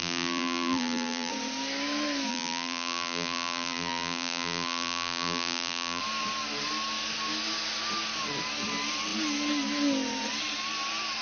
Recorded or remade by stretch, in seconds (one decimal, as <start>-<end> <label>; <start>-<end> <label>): 0.0-1.3 remade; 1.3-2.3 recorded; 2.3-6.0 remade; 6.0-11.2 recorded